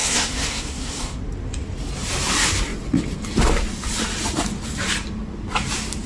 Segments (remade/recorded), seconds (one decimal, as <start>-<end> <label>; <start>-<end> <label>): 0.0-1.2 remade; 1.2-6.1 recorded